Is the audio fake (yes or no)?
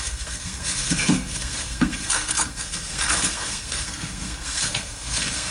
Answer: yes